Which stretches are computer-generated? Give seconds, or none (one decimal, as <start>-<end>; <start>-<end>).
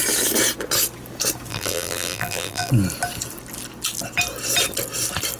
1.5-2.7